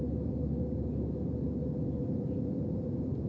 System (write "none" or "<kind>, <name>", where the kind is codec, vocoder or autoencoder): none